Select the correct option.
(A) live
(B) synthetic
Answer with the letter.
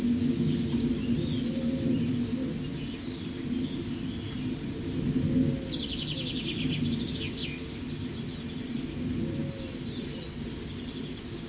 A